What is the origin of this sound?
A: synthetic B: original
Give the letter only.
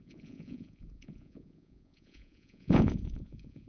A